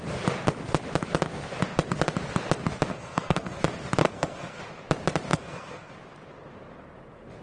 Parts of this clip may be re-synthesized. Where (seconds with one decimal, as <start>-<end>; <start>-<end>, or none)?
2.9-3.6; 4.0-4.6; 5.3-5.9